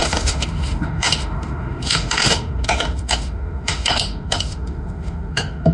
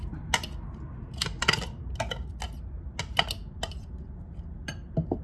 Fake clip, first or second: first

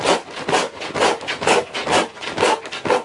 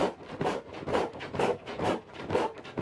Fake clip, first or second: second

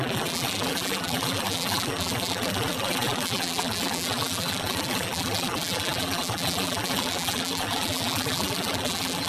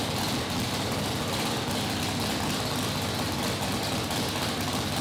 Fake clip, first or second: first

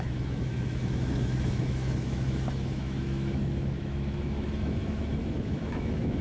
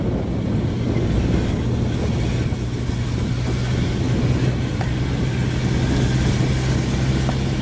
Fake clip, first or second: first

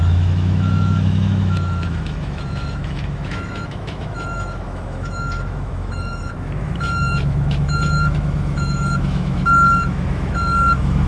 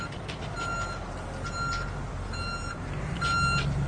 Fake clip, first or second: first